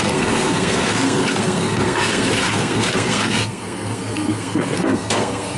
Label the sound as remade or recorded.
remade